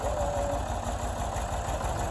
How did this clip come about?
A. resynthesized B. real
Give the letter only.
B